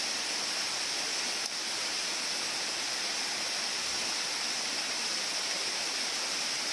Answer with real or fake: real